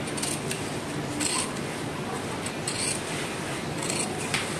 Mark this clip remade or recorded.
recorded